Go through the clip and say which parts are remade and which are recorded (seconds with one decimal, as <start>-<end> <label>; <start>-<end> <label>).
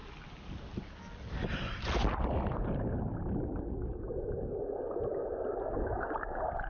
0.0-6.7 recorded